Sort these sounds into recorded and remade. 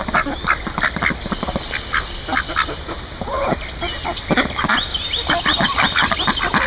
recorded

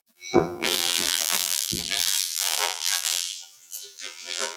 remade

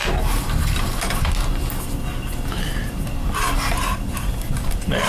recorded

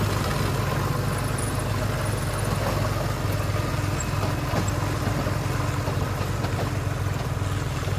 recorded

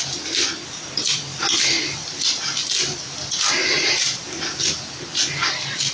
recorded